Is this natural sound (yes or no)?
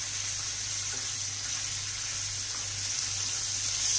yes